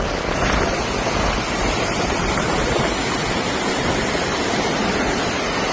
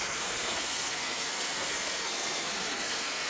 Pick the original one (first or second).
first